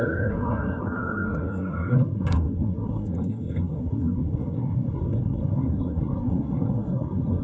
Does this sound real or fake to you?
fake